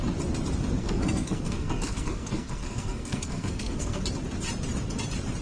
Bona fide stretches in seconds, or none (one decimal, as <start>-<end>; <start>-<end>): 0.0-0.8; 4.0-5.4